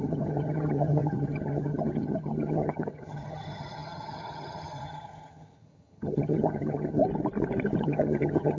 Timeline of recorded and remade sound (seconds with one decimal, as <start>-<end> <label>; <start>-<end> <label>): 0.0-7.0 remade; 7.0-7.8 recorded; 7.8-8.6 remade

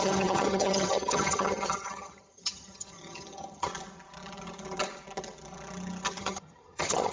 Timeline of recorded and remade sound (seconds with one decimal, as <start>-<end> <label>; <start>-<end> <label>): 0.0-3.7 remade; 3.7-6.2 recorded; 6.2-7.1 remade

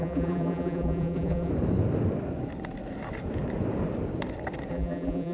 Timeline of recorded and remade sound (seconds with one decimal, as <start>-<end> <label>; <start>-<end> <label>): 0.0-1.5 remade; 1.5-4.7 recorded; 4.7-5.3 remade

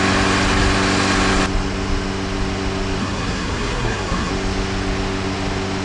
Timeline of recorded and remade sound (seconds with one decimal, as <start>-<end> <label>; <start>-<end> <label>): 0.0-3.0 recorded; 3.0-4.3 remade; 4.3-5.8 recorded

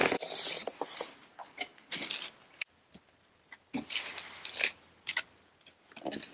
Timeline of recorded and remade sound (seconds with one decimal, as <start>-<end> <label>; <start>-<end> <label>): 0.0-6.3 recorded

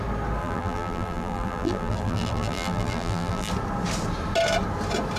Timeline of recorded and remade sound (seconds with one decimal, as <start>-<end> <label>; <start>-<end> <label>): 0.0-0.4 recorded; 0.4-3.5 remade; 3.5-5.2 recorded

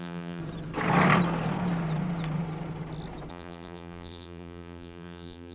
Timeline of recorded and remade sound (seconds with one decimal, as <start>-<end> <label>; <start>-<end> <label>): 0.0-0.4 remade; 0.4-3.3 recorded; 3.3-5.5 remade